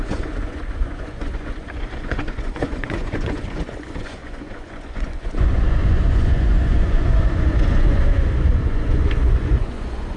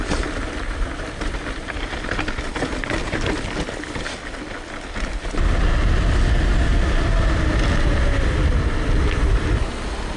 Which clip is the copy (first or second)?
first